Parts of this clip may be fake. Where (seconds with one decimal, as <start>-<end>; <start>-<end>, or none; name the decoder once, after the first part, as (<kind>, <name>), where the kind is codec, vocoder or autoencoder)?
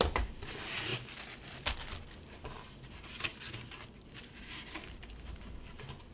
none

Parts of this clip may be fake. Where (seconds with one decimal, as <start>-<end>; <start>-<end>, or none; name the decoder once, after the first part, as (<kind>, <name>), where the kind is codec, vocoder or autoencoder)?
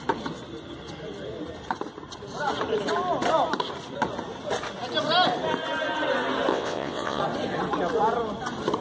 6.5-7.2 (vocoder, WaveNeXt)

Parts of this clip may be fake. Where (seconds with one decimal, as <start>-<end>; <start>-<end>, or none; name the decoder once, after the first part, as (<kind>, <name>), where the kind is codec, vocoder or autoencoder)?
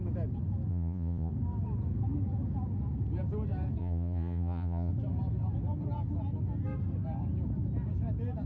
0.7-1.3 (vocoder, Vocos); 3.8-4.9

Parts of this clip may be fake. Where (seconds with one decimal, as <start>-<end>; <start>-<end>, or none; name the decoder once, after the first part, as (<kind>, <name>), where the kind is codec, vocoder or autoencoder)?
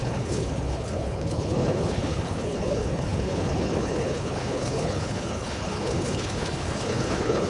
0.0-7.5 (codec, HILCodec)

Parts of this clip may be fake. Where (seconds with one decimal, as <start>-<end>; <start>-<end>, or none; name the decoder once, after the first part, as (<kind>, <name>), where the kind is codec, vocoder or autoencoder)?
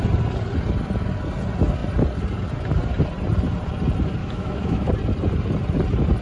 4.2-4.9 (autoencoder, DAC-VAE)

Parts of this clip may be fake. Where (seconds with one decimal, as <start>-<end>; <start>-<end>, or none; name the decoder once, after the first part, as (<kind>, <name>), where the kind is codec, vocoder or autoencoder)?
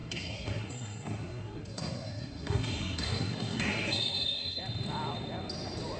0.0-4.6 (codec, SNAC)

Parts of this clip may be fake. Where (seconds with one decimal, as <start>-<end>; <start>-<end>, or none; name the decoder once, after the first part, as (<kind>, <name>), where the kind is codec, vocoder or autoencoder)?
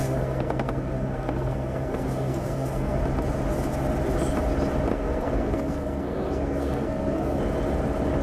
0.0-3.0 (codec, SNAC); 4.9-7.4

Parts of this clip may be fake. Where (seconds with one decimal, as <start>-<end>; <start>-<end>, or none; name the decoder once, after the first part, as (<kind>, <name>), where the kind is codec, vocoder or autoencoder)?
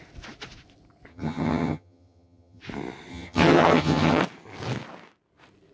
1.1-2.6 (vocoder, HiFi-GAN); 3.1-4.2